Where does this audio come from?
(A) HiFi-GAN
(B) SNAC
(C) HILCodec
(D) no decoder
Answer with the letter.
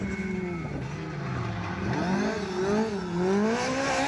D